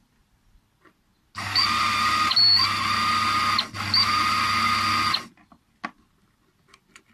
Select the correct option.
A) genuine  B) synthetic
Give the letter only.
A